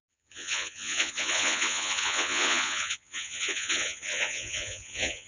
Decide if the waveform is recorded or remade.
remade